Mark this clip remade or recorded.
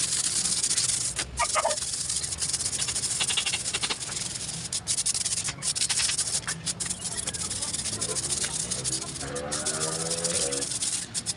recorded